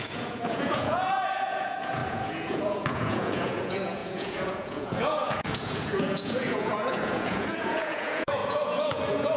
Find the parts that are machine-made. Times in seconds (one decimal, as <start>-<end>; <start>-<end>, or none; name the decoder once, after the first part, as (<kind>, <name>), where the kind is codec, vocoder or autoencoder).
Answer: 0.0-9.4 (vocoder, Vocos)